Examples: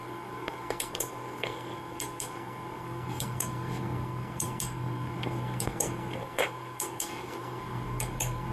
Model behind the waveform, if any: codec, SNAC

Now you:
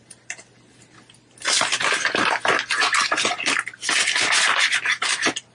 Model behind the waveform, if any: none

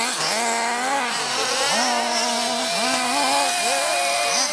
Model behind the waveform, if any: none